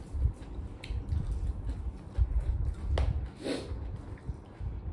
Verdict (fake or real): real